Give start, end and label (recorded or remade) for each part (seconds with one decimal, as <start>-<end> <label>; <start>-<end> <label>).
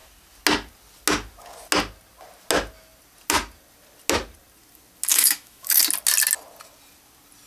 0.0-5.1 recorded; 5.1-5.8 remade; 5.8-7.5 recorded